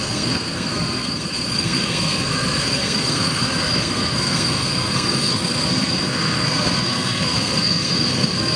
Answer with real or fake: fake